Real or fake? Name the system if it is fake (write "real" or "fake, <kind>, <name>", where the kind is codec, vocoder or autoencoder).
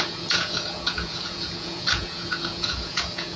fake, vocoder, Vocos